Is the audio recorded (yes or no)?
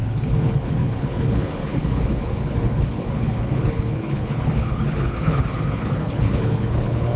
no